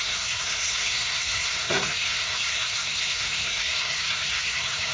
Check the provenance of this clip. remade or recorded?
remade